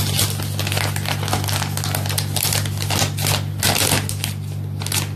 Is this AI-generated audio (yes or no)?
no